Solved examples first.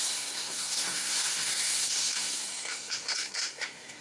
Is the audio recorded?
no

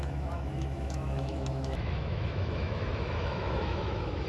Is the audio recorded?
no